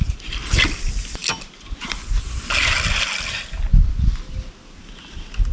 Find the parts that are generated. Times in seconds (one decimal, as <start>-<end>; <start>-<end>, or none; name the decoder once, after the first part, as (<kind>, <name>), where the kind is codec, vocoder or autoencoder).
none